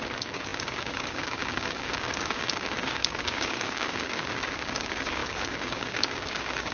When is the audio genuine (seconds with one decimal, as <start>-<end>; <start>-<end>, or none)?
none